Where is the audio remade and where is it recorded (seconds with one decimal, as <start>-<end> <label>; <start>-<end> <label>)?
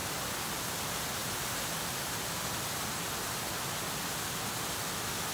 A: 0.0-0.6 remade; 0.6-5.3 recorded